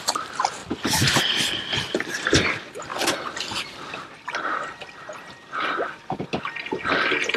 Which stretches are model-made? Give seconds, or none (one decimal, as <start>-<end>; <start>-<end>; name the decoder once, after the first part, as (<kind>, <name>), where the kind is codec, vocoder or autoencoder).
0.0-0.6 (vocoder, BigVGAN v2); 1.2-2.9; 3.6-7.4